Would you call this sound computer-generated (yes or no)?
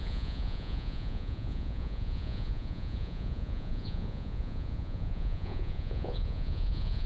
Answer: yes